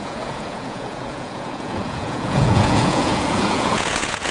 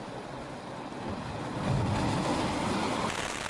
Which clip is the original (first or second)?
second